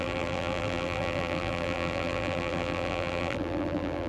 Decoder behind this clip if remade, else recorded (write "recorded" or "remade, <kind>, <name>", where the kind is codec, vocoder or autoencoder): remade, vocoder, BigVGAN v2